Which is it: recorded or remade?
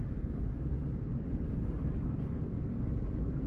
remade